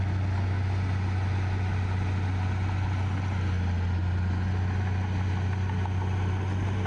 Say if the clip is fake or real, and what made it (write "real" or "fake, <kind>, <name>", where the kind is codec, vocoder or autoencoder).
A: real